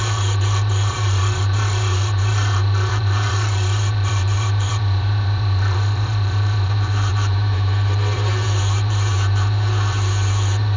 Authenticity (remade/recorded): remade